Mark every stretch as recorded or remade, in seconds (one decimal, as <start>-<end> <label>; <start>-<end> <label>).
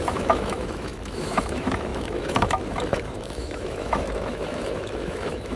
0.0-5.6 remade